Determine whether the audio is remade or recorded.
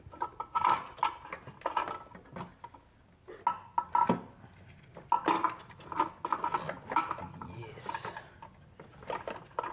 recorded